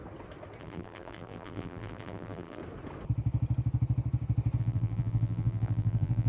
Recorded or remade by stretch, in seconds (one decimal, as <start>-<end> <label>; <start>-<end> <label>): 0.0-0.6 recorded; 0.6-2.6 remade; 2.6-4.6 recorded; 4.6-6.3 remade

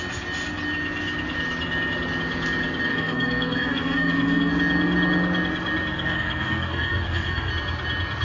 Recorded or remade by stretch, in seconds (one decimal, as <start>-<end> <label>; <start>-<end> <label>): 0.0-2.9 recorded; 2.9-4.5 remade; 4.5-5.9 recorded; 5.9-7.5 remade; 7.5-8.2 recorded

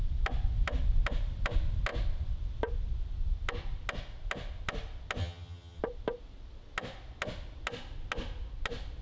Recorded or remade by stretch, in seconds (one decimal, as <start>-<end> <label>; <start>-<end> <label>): 0.0-5.2 recorded; 5.2-5.8 remade; 5.8-9.0 recorded

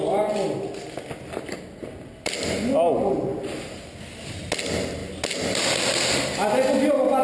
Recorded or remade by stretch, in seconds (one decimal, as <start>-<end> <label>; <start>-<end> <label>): 0.0-7.2 recorded

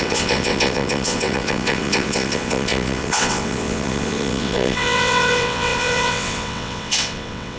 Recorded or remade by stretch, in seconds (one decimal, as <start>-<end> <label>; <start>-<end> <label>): 0.0-7.6 remade

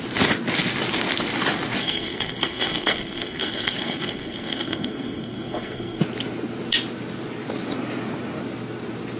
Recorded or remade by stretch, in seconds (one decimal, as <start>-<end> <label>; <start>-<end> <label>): 0.0-1.8 recorded; 1.8-6.0 remade; 6.0-9.2 recorded

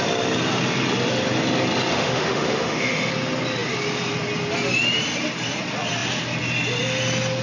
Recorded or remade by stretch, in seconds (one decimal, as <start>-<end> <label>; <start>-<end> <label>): 0.0-1.9 recorded; 1.9-3.1 remade; 3.1-7.4 recorded

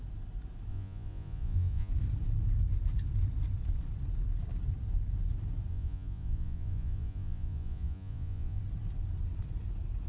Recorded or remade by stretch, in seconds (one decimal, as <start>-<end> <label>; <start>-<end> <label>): 0.0-0.7 recorded; 0.7-1.9 remade; 1.9-5.7 recorded; 5.7-8.6 remade; 8.6-10.1 recorded